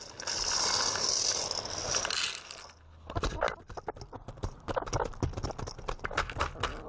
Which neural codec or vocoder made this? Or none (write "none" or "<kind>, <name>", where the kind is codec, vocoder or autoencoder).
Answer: none